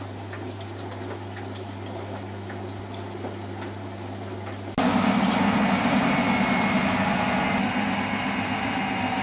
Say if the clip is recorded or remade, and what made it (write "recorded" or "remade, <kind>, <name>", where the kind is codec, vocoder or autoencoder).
recorded